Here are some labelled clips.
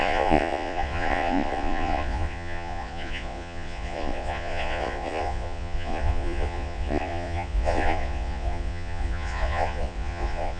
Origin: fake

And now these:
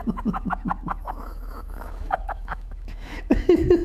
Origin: fake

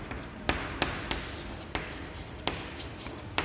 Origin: real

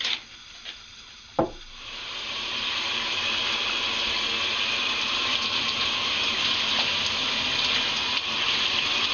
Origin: real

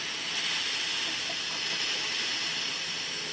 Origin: real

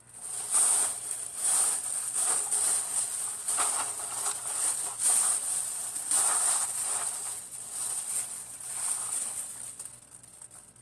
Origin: real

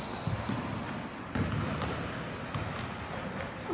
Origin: real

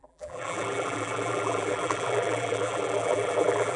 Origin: fake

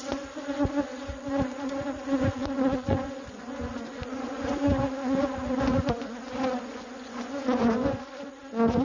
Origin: fake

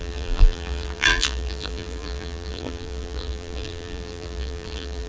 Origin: fake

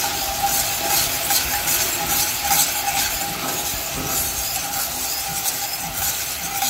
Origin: real